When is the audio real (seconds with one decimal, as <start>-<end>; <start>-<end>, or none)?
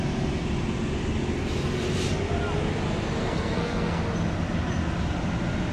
0.0-3.2; 4.0-5.7